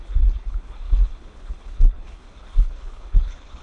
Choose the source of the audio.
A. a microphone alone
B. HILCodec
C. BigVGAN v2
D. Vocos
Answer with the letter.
B